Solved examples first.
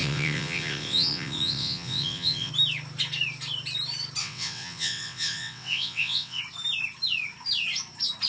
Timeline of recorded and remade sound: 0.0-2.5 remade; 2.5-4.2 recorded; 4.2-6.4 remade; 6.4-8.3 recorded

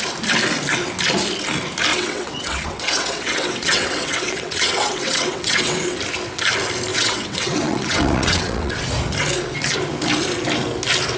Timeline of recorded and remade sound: 0.0-1.9 recorded; 1.9-6.0 remade; 6.0-6.9 recorded; 6.9-8.8 remade; 8.8-11.2 recorded

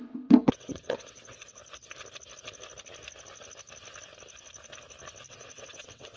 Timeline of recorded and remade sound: 0.0-1.6 remade; 1.6-5.3 recorded; 5.3-6.2 remade

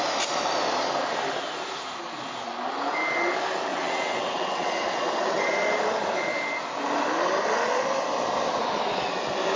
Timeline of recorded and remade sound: 0.0-3.7 recorded; 3.7-5.5 remade; 5.5-9.6 recorded